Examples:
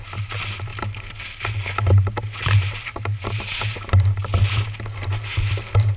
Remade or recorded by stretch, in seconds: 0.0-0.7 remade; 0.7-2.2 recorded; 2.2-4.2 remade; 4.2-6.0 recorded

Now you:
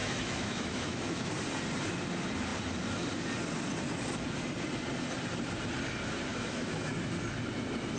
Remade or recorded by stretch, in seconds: 0.0-1.3 remade; 1.3-6.3 recorded; 6.3-6.9 remade; 6.9-8.0 recorded

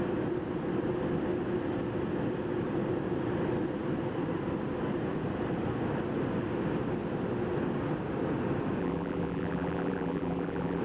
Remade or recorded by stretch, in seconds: 0.0-8.8 recorded; 8.8-10.8 remade

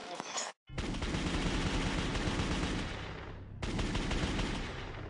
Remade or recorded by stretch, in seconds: 0.0-0.5 remade; 0.5-5.1 recorded

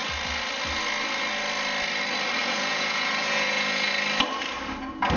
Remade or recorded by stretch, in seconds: 0.0-2.4 recorded; 2.4-3.9 remade; 3.9-5.2 recorded

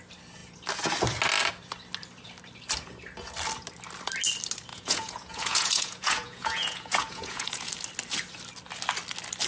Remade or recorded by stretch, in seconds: 0.0-4.7 recorded; 4.7-7.7 remade; 7.7-9.5 recorded